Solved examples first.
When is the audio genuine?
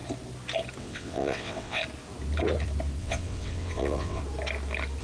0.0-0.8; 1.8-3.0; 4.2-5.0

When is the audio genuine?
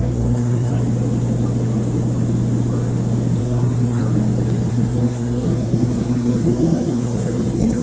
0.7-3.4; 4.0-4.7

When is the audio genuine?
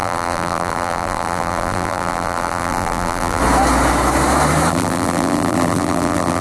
3.4-4.7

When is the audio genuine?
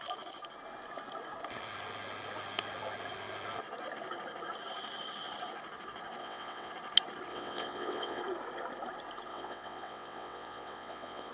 0.0-6.2; 6.7-7.3; 8.2-9.3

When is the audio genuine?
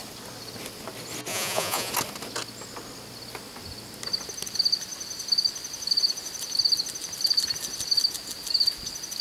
0.0-1.3; 1.9-9.2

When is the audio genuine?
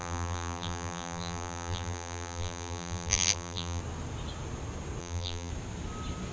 3.8-5.0; 5.5-6.3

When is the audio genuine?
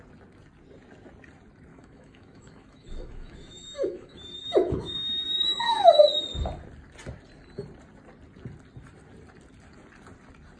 0.0-1.7; 6.0-10.6